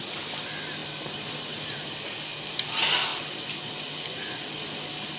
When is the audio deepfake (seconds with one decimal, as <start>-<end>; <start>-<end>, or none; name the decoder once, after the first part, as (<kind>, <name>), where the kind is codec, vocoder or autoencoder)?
none